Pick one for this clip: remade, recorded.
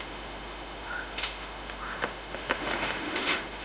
remade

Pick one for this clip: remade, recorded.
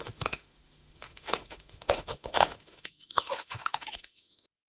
remade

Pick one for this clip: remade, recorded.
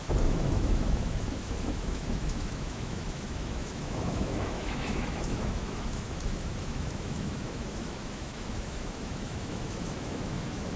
remade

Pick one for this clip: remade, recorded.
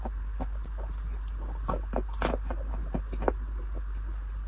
recorded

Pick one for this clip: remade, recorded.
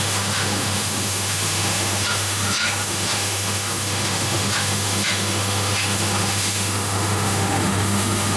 remade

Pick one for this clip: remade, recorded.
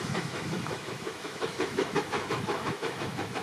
remade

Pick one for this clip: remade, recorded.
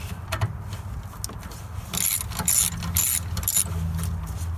recorded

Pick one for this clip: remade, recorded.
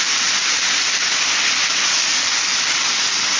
recorded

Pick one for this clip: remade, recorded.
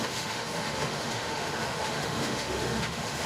remade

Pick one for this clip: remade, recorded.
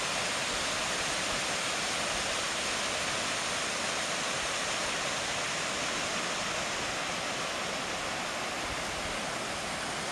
recorded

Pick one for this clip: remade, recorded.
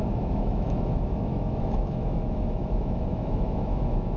remade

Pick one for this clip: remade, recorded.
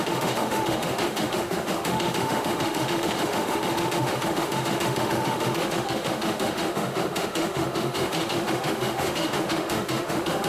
remade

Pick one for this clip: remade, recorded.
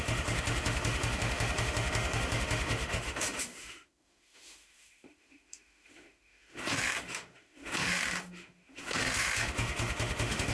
remade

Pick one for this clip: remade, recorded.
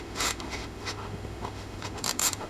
remade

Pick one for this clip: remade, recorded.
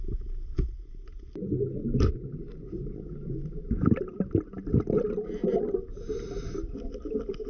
recorded